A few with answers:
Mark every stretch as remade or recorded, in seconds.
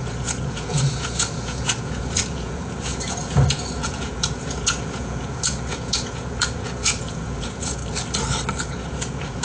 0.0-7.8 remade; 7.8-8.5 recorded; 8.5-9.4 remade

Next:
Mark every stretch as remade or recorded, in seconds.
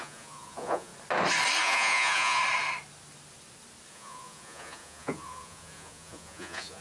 0.0-0.9 remade; 0.9-1.6 recorded; 1.6-2.4 remade; 2.4-3.9 recorded; 3.9-6.8 remade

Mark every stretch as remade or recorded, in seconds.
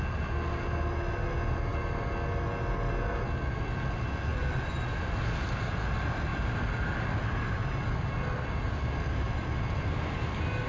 0.0-4.3 recorded; 4.3-5.8 remade; 5.8-10.7 recorded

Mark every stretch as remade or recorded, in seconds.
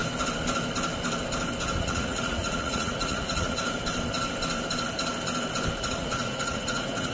0.0-1.8 recorded; 1.8-3.6 remade; 3.6-5.9 recorded; 5.9-7.1 remade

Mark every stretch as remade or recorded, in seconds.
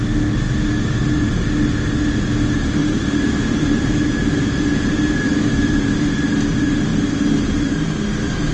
0.0-2.8 recorded; 2.8-5.9 remade; 5.9-8.5 recorded